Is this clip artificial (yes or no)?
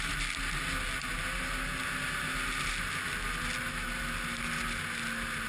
no